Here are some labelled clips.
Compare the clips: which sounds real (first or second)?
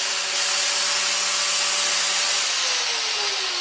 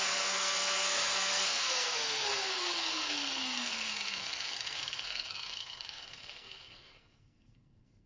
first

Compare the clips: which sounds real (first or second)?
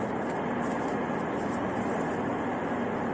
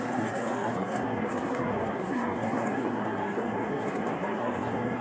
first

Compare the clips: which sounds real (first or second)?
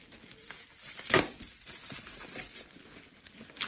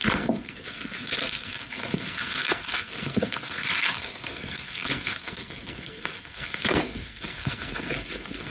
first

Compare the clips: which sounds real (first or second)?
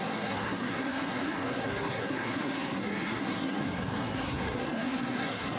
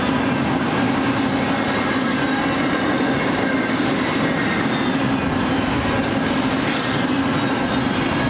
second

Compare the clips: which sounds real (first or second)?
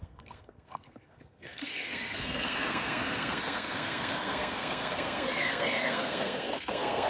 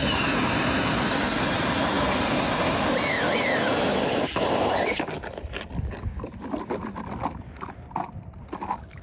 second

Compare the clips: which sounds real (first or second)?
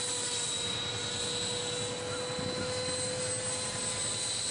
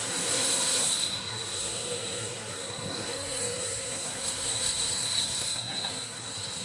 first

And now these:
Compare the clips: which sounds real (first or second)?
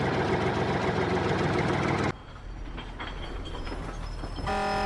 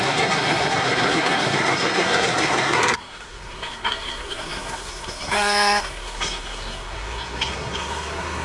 first